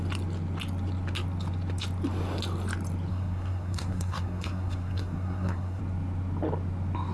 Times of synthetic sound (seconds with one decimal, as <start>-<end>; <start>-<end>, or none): 3.1-5.8